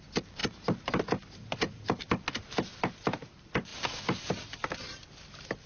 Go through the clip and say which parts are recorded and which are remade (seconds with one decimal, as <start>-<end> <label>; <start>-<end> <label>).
0.0-0.4 recorded; 0.4-1.0 remade; 1.0-5.7 recorded